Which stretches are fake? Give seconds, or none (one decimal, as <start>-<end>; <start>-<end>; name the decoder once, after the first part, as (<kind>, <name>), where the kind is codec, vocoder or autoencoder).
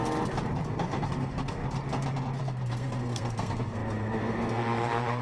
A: 0.7-1.6 (codec, SNAC); 2.4-5.2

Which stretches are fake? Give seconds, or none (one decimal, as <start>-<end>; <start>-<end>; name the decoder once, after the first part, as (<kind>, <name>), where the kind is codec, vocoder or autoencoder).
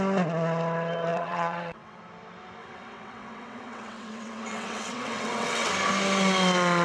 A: 1.1-2.0 (vocoder, WaveNeXt); 2.6-5.7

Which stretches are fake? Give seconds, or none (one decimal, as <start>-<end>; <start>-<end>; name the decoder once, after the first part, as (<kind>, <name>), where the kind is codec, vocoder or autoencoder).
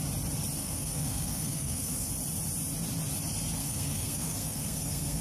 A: 0.6-2.1 (codec, SNAC); 3.6-5.2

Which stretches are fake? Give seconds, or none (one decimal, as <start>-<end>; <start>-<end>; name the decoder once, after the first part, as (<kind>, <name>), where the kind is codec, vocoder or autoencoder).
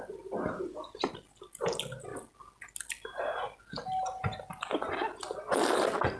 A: none